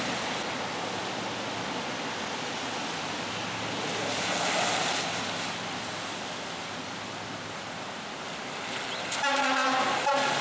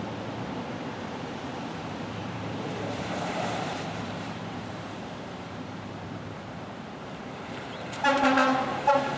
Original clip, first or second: first